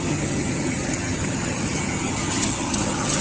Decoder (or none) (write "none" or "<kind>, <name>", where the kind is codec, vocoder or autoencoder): vocoder, HiFi-GAN